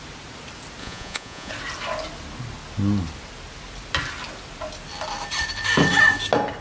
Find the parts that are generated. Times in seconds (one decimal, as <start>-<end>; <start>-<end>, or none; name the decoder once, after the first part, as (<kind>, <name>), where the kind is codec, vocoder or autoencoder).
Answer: 0.8-1.5 (vocoder, Vocos)